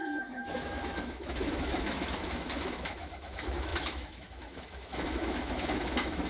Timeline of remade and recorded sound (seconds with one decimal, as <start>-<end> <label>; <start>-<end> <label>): 0.0-6.3 remade